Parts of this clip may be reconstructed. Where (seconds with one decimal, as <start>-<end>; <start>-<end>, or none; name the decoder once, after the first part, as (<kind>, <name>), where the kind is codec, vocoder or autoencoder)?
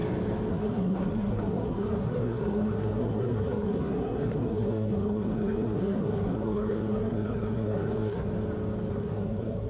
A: 0.5-8.3 (codec, SNAC); 8.9-9.7